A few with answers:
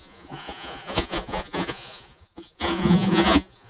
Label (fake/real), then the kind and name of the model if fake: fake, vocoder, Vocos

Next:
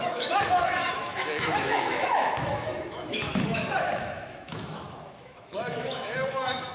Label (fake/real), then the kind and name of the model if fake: fake, autoencoder, DAC-VAE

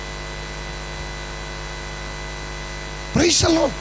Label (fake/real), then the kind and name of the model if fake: real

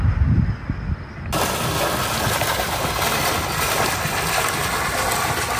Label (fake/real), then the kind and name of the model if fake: real